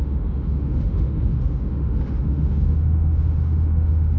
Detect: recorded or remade remade